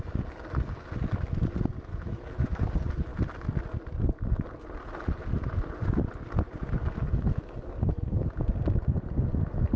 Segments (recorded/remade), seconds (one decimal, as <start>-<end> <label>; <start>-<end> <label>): 0.0-1.9 recorded; 1.9-2.6 remade; 2.6-9.8 recorded